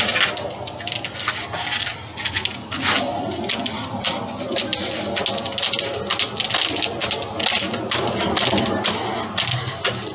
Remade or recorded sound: recorded